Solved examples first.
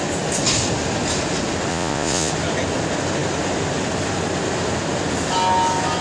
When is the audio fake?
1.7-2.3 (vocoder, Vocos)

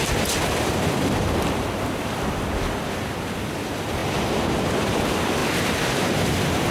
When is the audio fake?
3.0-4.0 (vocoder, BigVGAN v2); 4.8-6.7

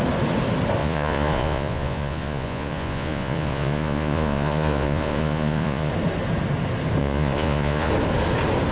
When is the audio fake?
0.8-5.9 (vocoder, Vocos); 7.0-7.9